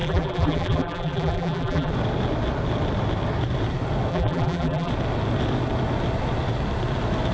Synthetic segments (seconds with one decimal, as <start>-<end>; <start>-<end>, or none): 0.0-1.9; 4.1-4.9